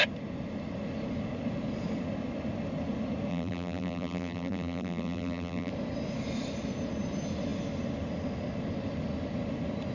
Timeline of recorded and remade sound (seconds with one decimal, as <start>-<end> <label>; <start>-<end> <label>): 0.0-3.3 recorded; 3.3-5.7 remade; 5.7-9.9 recorded